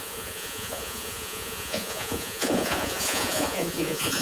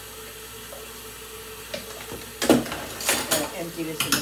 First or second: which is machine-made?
first